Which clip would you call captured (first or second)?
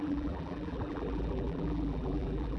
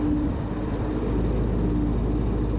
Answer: second